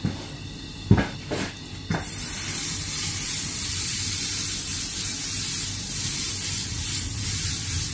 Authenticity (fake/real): fake